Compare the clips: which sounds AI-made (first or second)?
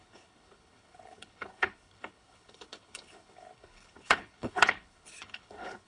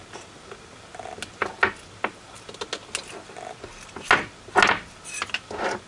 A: first